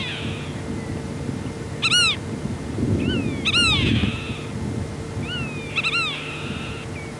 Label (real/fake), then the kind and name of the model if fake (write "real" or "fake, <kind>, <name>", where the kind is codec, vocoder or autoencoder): real